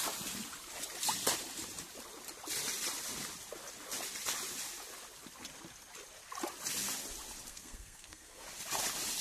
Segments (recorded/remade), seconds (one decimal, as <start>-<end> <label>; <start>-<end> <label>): 0.0-7.5 recorded; 7.5-8.4 remade; 8.4-9.2 recorded